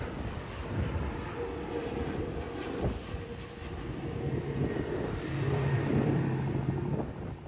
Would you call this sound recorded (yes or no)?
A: no